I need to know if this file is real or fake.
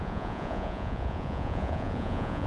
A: fake